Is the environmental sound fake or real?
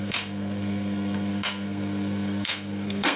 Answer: fake